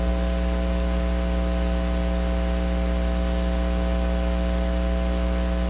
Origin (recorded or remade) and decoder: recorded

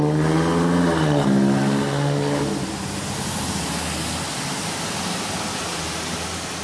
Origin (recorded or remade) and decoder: recorded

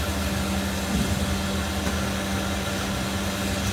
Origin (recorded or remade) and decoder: recorded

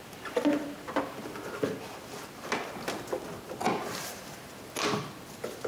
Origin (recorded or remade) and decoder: recorded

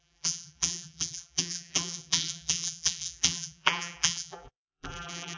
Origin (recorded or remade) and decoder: remade, vocoder, BigVGAN v2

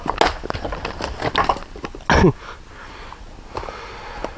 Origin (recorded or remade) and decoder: recorded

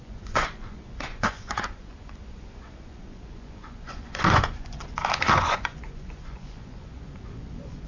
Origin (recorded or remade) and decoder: remade, vocoder, Vocos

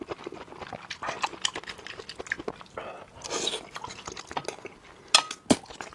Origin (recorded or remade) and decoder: recorded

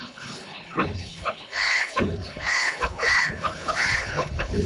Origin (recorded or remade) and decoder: remade, codec, HILCodec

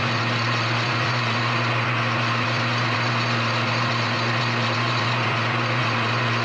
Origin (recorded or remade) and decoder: remade, vocoder, Vocos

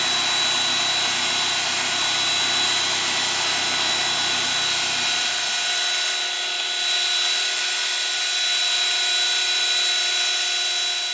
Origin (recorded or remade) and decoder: recorded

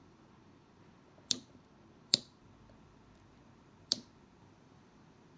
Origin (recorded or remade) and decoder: remade, vocoder, BigVGAN v2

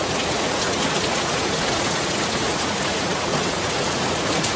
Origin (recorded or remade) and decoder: remade, vocoder, Vocos